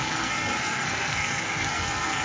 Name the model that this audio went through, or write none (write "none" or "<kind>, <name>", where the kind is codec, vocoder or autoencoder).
codec, SNAC